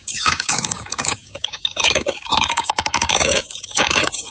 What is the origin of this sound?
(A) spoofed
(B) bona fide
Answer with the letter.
A